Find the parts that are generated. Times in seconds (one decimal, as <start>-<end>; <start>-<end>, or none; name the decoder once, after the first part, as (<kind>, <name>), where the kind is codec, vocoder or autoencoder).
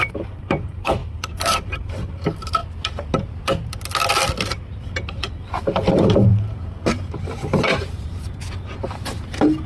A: 0.0-2.6 (vocoder, BigVGAN v2); 5.0-9.7